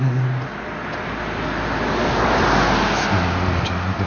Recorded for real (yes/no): yes